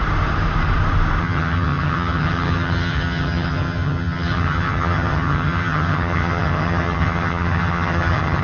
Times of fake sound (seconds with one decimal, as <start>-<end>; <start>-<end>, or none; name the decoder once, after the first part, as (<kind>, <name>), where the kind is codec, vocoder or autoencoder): 1.2-8.4 (vocoder, HiFi-GAN)

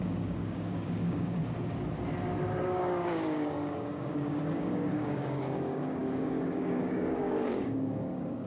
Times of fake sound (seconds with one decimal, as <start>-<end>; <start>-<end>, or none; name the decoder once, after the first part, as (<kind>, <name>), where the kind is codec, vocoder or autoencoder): 0.0-1.4 (codec, DAC); 2.6-8.5